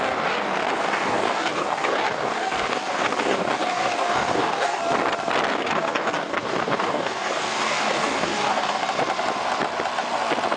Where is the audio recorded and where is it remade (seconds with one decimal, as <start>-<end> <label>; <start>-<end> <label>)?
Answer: 0.0-4.8 remade; 4.8-5.5 recorded; 5.5-8.8 remade; 8.8-10.6 recorded